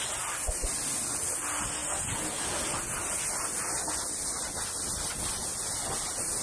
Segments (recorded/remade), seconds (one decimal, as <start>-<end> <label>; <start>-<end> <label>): 0.0-6.4 recorded